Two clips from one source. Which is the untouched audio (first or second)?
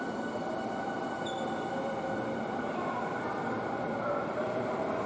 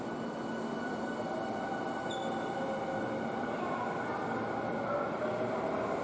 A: second